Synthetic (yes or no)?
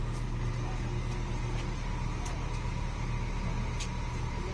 no